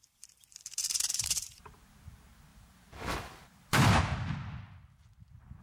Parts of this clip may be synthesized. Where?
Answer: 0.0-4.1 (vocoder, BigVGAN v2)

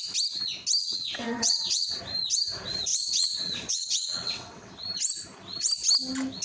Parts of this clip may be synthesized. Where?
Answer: 0.8-2.0 (vocoder, WaveNeXt); 2.9-4.7

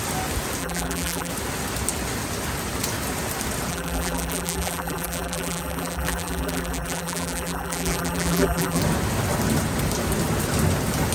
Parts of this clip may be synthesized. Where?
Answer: 0.6-1.3 (vocoder, BigVGAN v2); 3.7-8.8

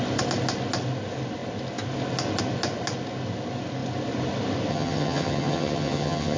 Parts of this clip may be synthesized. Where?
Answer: 4.7-6.4 (vocoder, HiFi-GAN)

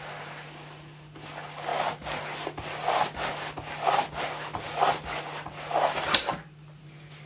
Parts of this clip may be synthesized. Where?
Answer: none

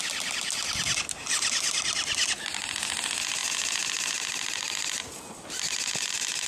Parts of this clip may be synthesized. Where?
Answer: none

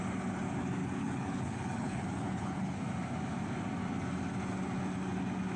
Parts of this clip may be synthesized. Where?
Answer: 0.8-2.8 (codec, HILCodec)